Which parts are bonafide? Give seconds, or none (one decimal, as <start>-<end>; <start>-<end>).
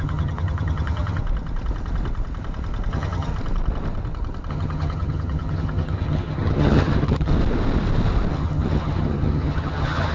1.2-2.9; 3.3-4.5; 7.3-8.3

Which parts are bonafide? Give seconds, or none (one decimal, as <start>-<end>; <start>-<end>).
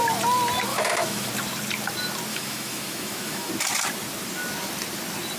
0.0-0.7; 1.3-2.3; 3.5-5.4